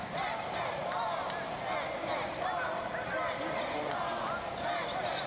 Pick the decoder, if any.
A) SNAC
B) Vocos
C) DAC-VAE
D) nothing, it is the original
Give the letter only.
D